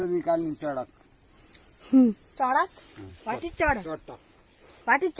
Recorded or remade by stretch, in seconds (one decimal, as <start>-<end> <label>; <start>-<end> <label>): 0.0-5.2 recorded